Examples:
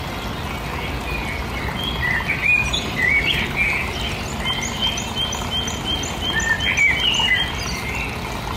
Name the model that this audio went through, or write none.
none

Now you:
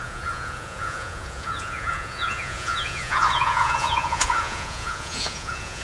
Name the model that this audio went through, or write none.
vocoder, Vocos